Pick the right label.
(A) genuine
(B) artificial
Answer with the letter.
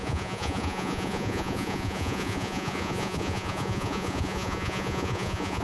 B